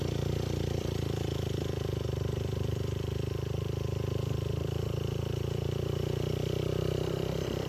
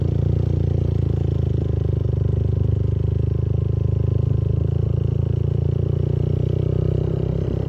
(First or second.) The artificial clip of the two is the first